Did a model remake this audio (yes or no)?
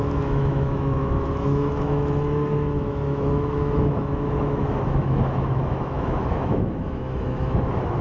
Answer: yes